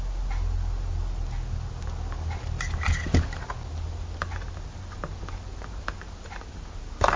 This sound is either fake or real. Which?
real